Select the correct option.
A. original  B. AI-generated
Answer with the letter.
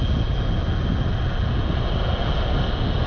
A